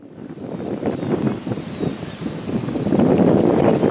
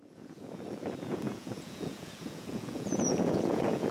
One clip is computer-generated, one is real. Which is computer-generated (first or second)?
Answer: second